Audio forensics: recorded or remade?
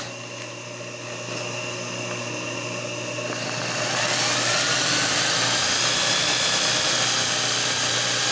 recorded